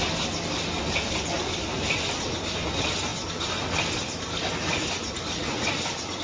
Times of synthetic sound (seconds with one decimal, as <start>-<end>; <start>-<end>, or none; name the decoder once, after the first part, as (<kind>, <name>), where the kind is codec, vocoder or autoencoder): none